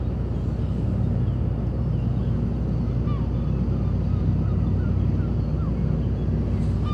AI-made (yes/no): no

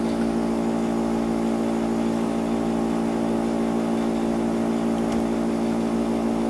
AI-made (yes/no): no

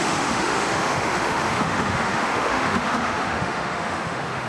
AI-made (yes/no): yes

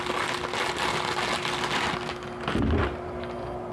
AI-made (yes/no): no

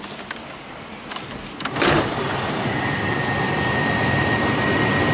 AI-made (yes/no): no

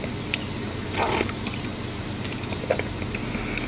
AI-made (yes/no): no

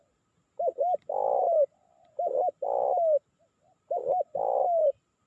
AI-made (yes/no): no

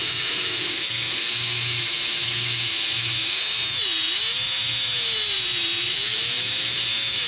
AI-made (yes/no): yes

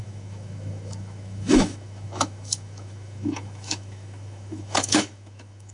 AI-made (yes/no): yes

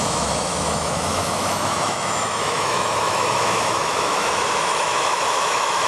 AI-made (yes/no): yes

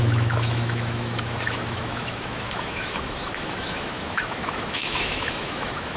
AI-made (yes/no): yes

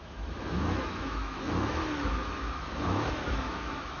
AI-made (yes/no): yes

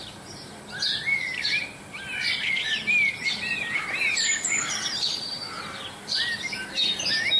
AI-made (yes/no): no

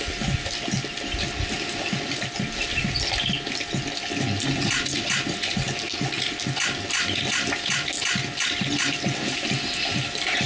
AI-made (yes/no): no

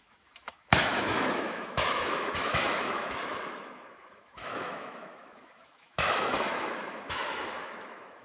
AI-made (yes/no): yes